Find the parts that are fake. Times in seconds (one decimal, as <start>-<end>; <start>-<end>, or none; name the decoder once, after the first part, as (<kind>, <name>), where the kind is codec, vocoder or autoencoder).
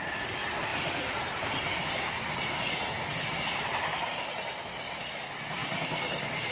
none